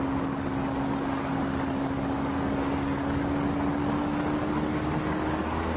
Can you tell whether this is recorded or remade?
remade